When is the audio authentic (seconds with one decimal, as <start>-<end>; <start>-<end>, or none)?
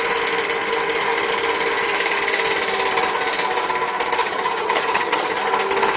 0.0-4.2; 5.4-6.0